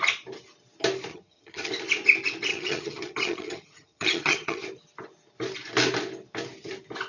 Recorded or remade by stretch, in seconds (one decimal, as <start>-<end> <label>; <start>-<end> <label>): 0.0-1.1 recorded; 1.1-1.7 remade; 1.7-2.5 recorded; 2.5-4.6 remade; 4.6-7.1 recorded